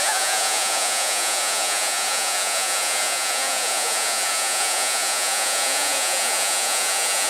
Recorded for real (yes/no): no